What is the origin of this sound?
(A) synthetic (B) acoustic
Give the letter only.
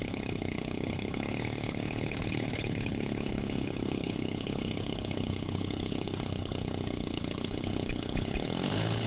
A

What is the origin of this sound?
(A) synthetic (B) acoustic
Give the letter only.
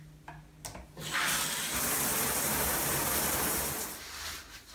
B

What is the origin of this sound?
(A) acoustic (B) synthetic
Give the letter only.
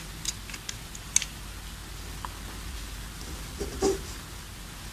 A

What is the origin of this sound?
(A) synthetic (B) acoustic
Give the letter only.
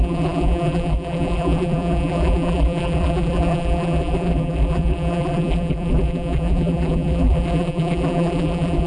A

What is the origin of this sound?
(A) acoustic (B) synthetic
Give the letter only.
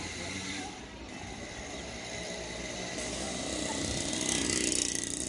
A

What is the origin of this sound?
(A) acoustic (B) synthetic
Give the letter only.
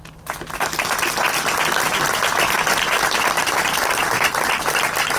A